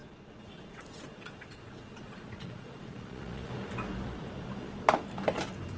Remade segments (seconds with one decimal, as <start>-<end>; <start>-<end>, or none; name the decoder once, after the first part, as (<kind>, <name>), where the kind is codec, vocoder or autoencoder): 0.0-3.5 (vocoder, Vocos)